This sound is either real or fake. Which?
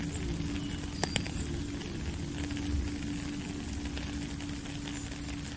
real